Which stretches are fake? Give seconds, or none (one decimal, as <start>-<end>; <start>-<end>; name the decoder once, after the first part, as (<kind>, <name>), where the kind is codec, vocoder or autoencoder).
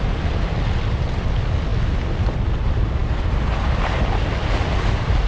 none